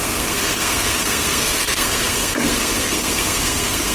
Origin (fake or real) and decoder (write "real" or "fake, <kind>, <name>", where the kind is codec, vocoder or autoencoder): fake, codec, SNAC